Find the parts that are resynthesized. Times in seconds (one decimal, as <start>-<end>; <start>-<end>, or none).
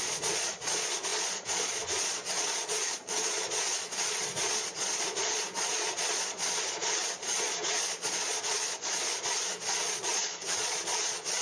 0.0-11.4